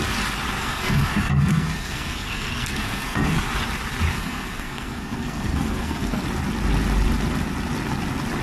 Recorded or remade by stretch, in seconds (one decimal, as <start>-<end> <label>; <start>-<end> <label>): 0.0-0.6 recorded; 0.6-3.4 remade; 3.4-4.1 recorded; 4.1-6.2 remade; 6.2-8.4 recorded